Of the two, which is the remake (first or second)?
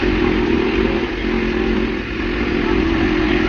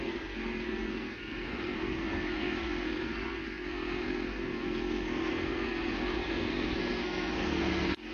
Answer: second